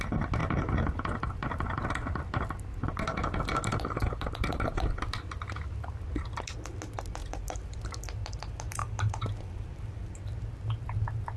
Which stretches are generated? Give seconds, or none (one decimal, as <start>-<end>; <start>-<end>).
7.2-7.8; 8.8-10.1